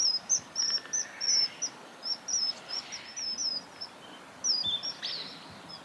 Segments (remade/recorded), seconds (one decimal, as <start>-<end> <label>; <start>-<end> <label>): 0.0-2.9 remade; 2.9-5.8 recorded